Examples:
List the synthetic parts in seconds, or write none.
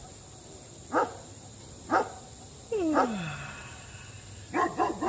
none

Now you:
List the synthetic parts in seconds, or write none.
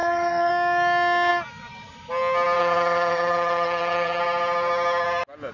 0.0-0.5 (vocoder, HiFi-GAN); 2.6-4.2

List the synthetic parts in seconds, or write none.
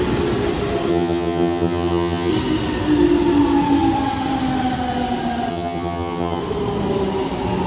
0.9-2.3 (vocoder, HiFi-GAN); 5.5-6.4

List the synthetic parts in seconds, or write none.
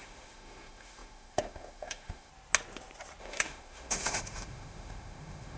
0.0-2.3 (autoencoder, DAC-VAE); 3.2-5.6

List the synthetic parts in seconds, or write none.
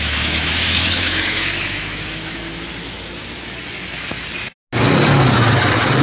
0.0-2.4 (autoencoder, DAC-VAE)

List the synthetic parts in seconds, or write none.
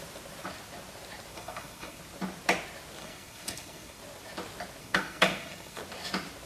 1.3-2.0 (codec, SNAC); 3.0-4.0; 4.8-5.8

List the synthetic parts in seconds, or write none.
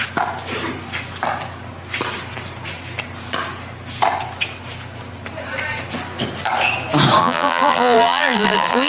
7.2-8.9 (vocoder, BigVGAN v2)